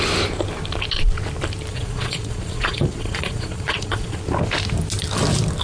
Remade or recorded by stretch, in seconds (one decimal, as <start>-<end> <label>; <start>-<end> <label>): 0.0-1.7 recorded; 1.7-4.2 remade; 4.2-5.6 recorded